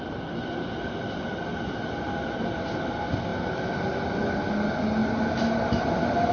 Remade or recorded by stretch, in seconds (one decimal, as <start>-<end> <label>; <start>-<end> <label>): 0.0-6.3 recorded